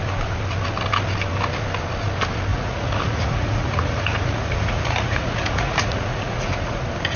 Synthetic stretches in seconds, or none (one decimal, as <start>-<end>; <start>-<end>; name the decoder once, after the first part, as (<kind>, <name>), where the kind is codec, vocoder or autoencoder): 2.5-6.8 (vocoder, Vocos)